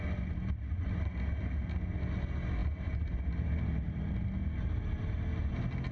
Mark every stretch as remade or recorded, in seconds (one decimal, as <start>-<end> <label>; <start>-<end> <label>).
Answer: 0.0-5.9 recorded